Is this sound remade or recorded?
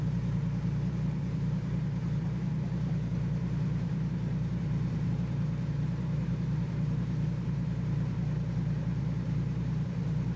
remade